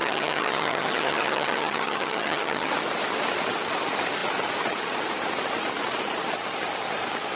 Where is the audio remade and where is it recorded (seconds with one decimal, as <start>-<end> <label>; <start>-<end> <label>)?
0.0-2.7 remade; 2.7-7.4 recorded